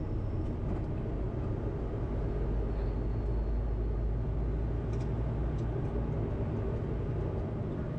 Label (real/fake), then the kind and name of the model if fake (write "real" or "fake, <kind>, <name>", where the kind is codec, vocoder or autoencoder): real